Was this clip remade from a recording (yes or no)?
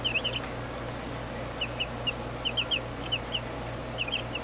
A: no